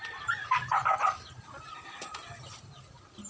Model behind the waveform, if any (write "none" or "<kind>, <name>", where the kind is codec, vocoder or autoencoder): none